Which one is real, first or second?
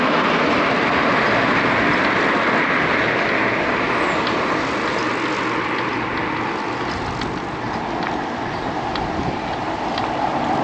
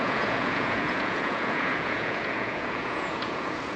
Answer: first